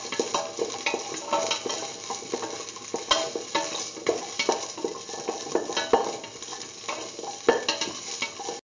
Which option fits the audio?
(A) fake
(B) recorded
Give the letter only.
B